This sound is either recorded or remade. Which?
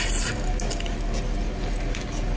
recorded